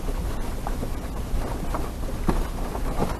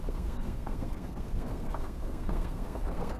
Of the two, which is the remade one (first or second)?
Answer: second